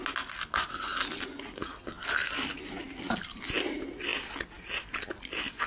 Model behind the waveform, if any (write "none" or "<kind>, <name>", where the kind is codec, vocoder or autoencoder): none